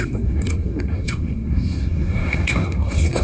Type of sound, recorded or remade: remade